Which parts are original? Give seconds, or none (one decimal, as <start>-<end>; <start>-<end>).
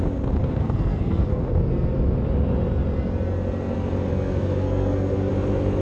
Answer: 0.0-0.4; 1.4-4.1; 5.3-5.8